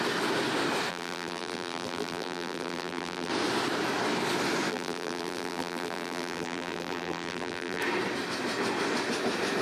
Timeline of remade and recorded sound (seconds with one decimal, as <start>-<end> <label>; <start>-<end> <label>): 0.0-0.9 recorded; 0.9-3.3 remade; 3.3-4.7 recorded; 4.7-7.8 remade; 7.8-9.6 recorded